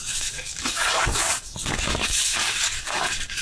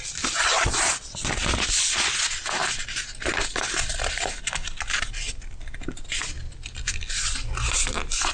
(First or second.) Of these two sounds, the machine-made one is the first